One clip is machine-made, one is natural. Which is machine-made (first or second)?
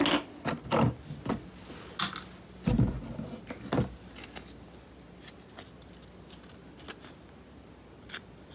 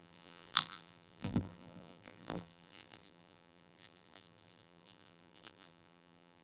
second